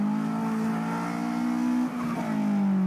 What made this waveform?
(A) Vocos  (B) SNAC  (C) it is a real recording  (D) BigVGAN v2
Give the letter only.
C